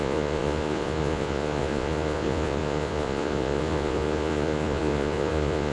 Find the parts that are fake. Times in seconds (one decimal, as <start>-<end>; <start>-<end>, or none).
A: 0.0-5.7